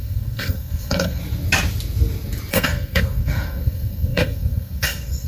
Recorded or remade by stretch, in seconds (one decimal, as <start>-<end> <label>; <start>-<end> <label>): 0.0-1.2 remade; 1.2-2.5 recorded; 2.5-5.3 remade